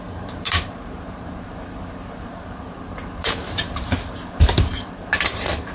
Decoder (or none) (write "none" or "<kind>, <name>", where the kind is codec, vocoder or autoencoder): vocoder, BigVGAN v2